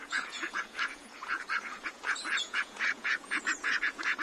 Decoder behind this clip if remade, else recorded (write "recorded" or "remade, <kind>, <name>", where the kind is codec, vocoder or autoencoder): remade, vocoder, Vocos